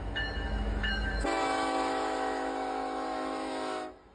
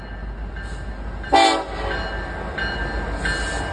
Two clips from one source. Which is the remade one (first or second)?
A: first